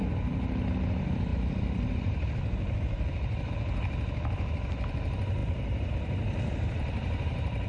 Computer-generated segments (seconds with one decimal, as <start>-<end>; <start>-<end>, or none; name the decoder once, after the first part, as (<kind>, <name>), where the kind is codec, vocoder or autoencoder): 1.3-3.5 (vocoder, BigVGAN v2); 5.4-5.9